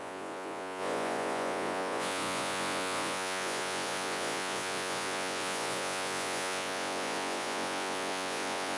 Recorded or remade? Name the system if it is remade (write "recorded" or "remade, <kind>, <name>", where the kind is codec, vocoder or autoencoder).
remade, vocoder, Vocos